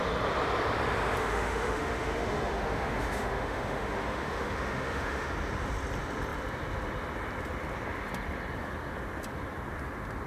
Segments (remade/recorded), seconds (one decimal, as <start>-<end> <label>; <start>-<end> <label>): 0.0-1.2 recorded; 1.2-5.3 remade; 5.3-10.3 recorded